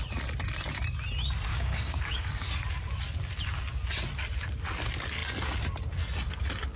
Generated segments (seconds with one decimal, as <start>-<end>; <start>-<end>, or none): 1.5-2.5